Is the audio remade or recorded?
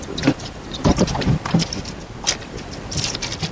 remade